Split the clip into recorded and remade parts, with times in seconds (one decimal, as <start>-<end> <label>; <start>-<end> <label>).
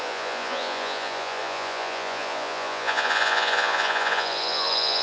0.0-5.0 remade